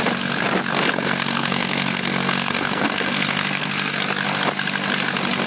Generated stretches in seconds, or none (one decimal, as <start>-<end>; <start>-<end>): 0.7-4.0